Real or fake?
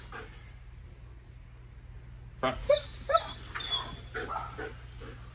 real